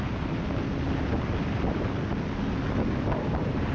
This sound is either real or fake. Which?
real